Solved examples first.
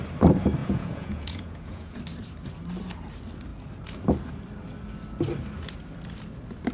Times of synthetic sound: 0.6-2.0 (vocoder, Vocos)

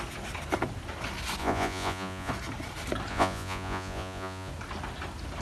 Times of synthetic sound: 1.4-2.3 (vocoder, Vocos); 3.1-4.5